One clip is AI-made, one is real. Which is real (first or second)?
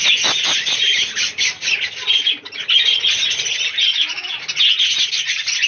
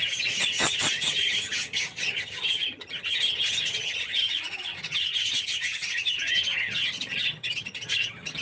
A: first